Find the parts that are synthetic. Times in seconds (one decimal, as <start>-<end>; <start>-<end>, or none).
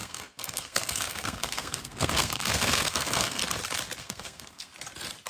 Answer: 0.0-3.4; 4.0-4.7